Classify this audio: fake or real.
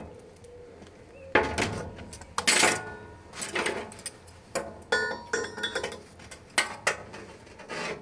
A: real